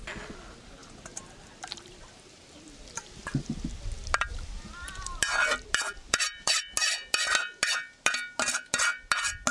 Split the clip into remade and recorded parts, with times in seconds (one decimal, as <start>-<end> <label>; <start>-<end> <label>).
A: 0.0-6.0 recorded; 6.0-6.6 remade; 6.6-9.5 recorded